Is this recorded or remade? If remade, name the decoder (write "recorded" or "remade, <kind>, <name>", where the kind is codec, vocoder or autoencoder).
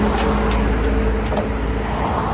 recorded